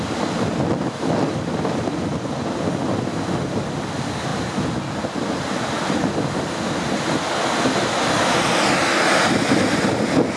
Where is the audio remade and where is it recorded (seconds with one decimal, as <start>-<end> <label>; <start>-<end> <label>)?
0.0-10.4 recorded